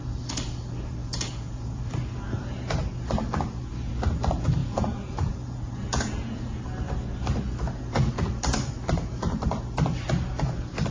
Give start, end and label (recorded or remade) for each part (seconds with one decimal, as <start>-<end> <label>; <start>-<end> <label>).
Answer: 0.0-1.0 recorded; 1.0-1.8 remade; 1.8-4.6 recorded; 4.6-6.6 remade; 6.6-10.9 recorded